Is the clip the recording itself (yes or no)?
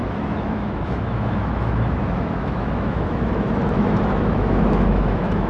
no